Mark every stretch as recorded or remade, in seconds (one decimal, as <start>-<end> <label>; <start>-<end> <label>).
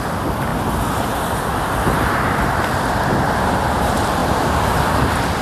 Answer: 0.0-0.5 remade; 0.5-2.5 recorded; 2.5-5.4 remade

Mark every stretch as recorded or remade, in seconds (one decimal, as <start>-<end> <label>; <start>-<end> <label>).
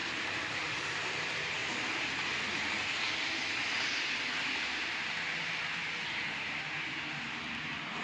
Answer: 0.0-1.6 remade; 1.6-6.1 recorded; 6.1-8.0 remade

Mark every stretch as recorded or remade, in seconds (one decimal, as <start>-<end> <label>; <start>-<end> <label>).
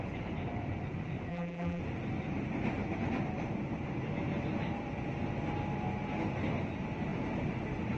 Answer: 0.0-1.3 recorded; 1.3-1.8 remade; 1.8-8.0 recorded